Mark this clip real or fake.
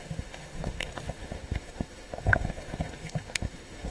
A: fake